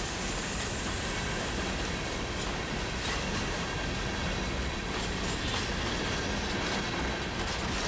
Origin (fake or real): real